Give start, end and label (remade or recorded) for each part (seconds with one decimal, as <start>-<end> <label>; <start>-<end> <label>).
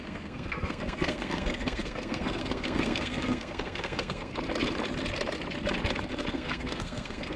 0.0-4.3 remade; 4.3-6.3 recorded; 6.3-7.4 remade